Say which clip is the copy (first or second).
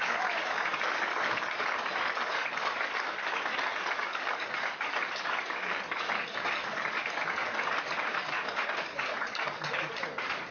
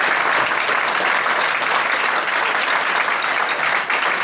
first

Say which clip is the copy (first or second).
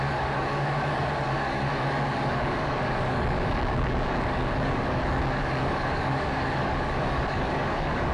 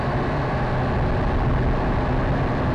first